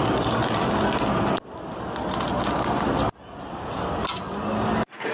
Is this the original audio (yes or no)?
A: yes